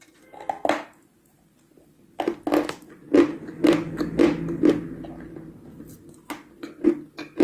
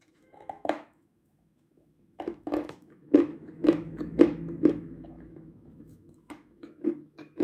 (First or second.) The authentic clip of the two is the first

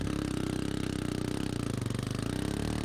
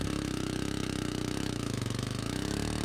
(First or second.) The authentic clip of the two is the first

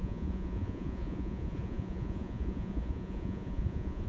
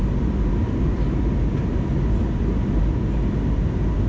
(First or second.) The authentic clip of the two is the second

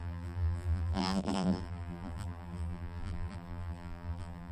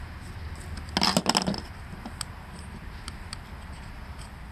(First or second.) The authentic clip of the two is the second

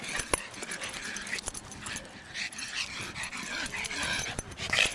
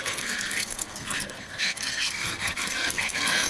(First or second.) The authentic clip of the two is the first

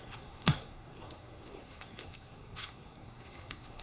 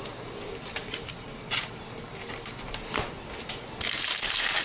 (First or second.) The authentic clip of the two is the second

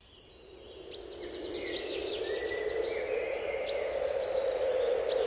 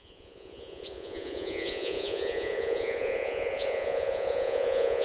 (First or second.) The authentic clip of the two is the first